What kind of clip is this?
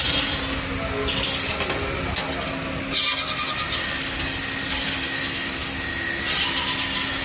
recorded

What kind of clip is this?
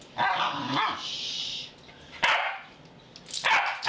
recorded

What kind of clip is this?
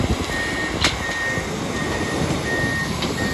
recorded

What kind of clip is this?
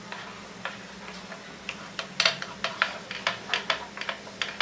recorded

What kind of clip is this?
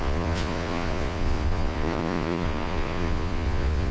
remade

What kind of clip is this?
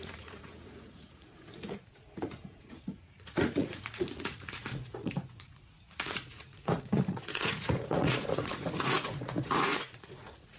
remade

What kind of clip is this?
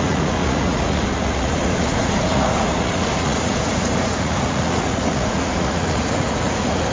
remade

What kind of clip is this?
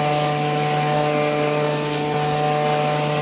recorded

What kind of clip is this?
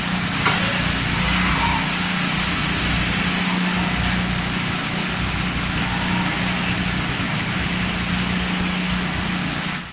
recorded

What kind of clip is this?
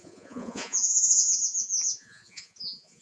remade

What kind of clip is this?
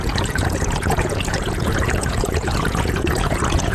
remade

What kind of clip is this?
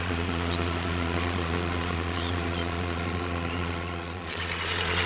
remade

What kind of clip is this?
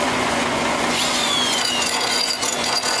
remade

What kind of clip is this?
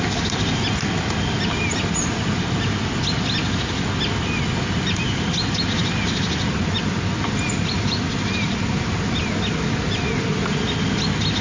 recorded